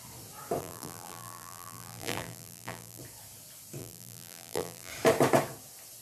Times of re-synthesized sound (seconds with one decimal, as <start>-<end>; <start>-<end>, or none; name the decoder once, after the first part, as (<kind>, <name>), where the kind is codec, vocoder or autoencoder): 0.6-3.0 (vocoder, BigVGAN v2); 3.8-4.9